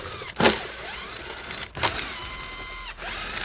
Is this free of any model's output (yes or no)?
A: no